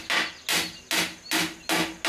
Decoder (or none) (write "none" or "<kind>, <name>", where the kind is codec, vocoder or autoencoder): none